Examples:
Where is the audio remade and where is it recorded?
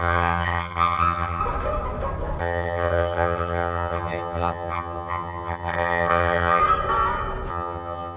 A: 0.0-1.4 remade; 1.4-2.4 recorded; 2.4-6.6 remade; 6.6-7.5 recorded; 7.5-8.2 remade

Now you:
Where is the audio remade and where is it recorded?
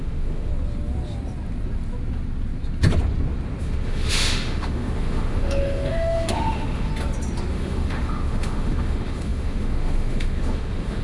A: 0.0-0.5 remade; 0.5-3.6 recorded; 3.6-6.9 remade; 6.9-7.5 recorded; 7.5-11.0 remade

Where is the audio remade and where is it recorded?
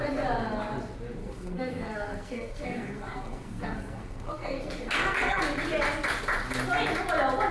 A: 0.0-1.2 recorded; 1.2-5.4 remade; 5.4-7.5 recorded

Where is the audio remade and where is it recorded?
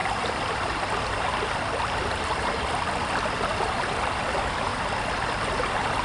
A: 0.0-6.0 recorded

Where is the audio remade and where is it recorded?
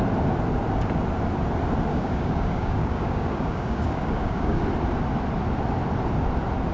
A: 0.0-1.9 recorded; 1.9-4.6 remade; 4.6-6.7 recorded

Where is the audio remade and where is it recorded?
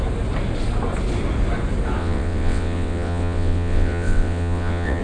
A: 0.0-2.0 recorded; 2.0-5.0 remade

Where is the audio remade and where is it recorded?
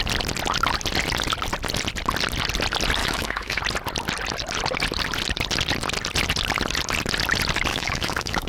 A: 0.0-3.0 recorded; 3.0-3.6 remade; 3.6-7.7 recorded; 7.7-8.5 remade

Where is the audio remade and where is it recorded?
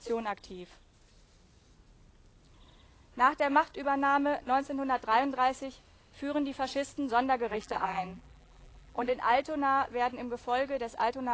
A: 0.0-7.5 recorded; 7.5-9.1 remade; 9.1-11.3 recorded